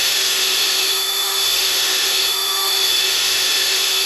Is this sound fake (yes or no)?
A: yes